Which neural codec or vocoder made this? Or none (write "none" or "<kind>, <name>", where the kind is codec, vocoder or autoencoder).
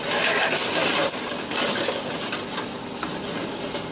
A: none